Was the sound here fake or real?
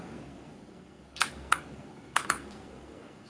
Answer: fake